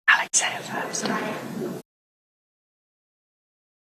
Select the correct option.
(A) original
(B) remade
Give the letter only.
A